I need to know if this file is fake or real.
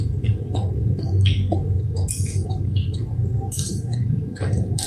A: fake